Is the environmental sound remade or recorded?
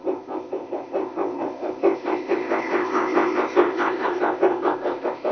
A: remade